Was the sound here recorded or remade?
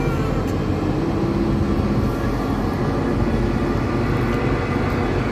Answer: recorded